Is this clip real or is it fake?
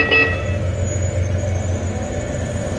real